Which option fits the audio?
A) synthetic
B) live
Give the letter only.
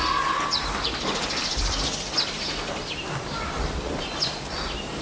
B